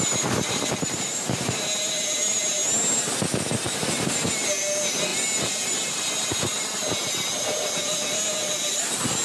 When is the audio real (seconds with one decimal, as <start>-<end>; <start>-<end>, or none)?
2.6-3.7